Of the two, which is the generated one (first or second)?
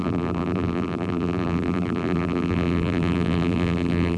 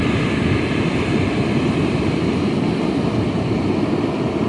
first